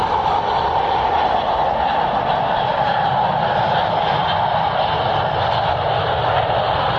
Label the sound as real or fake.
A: real